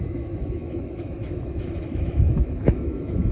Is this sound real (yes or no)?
no